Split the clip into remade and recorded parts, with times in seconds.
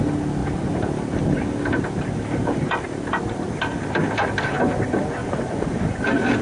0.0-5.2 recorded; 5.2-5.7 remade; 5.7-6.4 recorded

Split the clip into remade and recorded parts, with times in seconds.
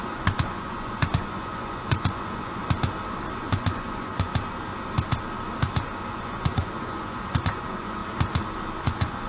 0.0-2.6 remade; 2.6-3.4 recorded; 3.4-4.3 remade; 4.3-6.1 recorded; 6.1-8.0 remade; 8.0-8.8 recorded; 8.8-9.3 remade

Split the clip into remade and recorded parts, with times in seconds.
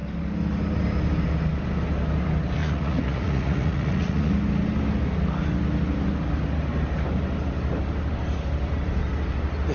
0.0-2.6 recorded; 2.6-4.3 remade; 4.3-9.7 recorded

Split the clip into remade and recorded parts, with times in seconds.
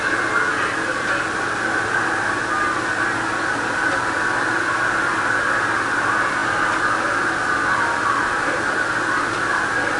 0.0-10.0 recorded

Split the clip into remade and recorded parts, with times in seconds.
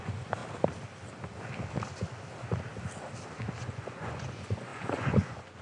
0.0-0.4 remade; 0.4-3.6 recorded; 3.6-5.6 remade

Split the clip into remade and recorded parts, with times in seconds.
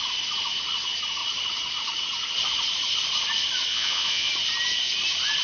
0.0-3.7 recorded; 3.7-4.3 remade; 4.3-5.4 recorded